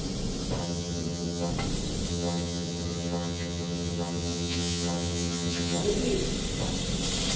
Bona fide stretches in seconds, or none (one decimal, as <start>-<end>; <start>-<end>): 0.0-0.6; 1.5-2.1; 5.8-7.4